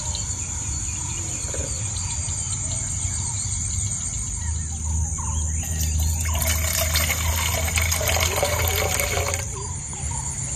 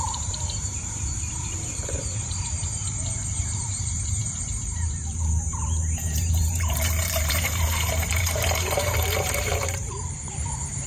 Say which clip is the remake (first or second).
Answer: second